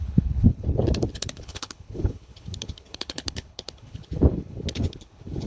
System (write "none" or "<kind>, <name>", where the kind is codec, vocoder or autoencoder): codec, HILCodec